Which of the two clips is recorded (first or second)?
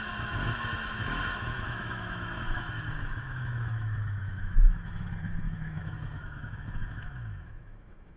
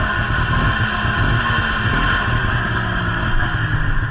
second